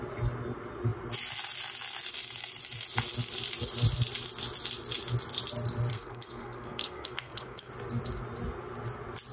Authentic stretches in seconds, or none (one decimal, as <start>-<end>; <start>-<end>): 0.0-5.9; 7.7-9.3